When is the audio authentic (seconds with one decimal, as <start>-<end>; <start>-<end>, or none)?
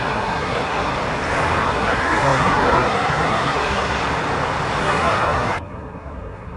0.9-1.7; 4.0-4.8